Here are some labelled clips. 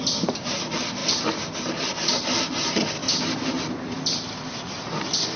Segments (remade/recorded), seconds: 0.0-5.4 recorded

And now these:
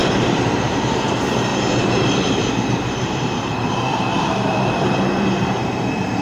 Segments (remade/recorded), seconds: 0.0-6.2 remade

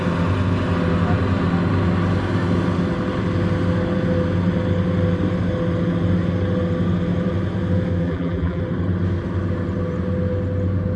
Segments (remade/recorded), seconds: 0.0-8.0 recorded; 8.0-8.6 remade; 8.6-11.0 recorded

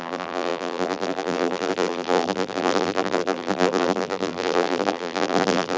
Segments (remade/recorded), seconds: 0.0-5.8 remade

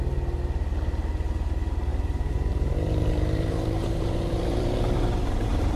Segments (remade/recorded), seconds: 0.0-1.9 recorded; 1.9-5.8 remade